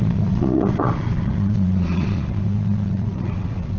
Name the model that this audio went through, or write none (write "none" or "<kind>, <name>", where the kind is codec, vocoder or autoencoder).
vocoder, Vocos